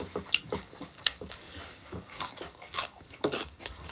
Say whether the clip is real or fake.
fake